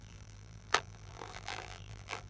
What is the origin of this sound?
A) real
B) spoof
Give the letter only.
B